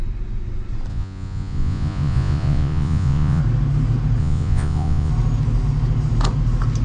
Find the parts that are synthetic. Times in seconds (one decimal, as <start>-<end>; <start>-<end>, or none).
0.9-3.4; 4.2-5.1